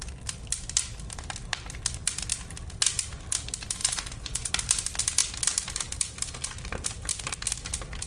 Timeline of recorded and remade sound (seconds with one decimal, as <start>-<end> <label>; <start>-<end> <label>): 0.0-3.8 recorded; 3.8-4.5 remade; 4.5-8.1 recorded